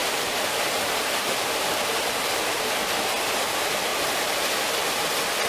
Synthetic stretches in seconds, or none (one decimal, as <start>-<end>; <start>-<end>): 0.0-3.1; 3.9-4.4